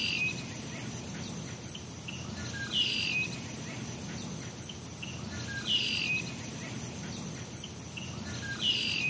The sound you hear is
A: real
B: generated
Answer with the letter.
A